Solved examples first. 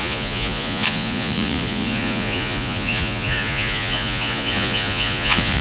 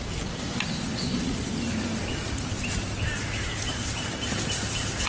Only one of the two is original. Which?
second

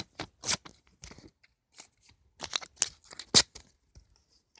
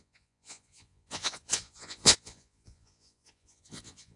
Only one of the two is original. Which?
first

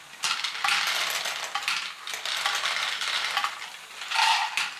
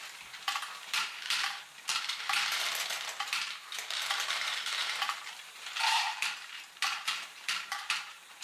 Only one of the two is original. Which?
first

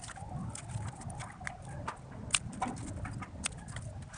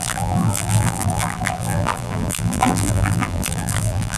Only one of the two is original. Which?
first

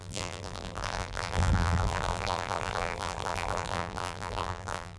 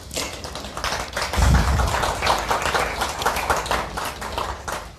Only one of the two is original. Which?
second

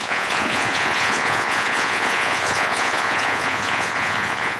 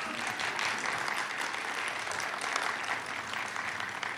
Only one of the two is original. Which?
second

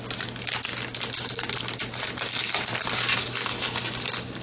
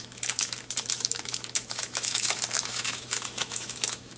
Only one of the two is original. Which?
first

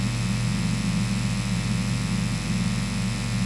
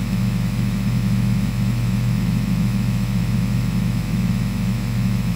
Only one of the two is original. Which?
first